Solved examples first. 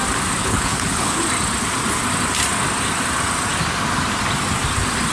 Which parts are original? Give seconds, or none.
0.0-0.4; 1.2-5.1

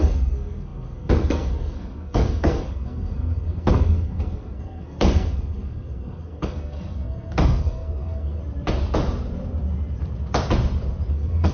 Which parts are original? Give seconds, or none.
8.4-11.1

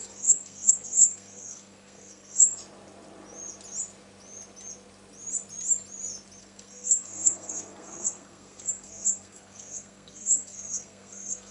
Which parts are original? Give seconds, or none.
2.6-6.4